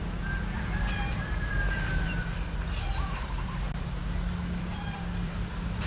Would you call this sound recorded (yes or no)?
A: no